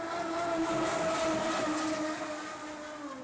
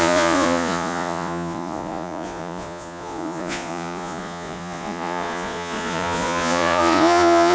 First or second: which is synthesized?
second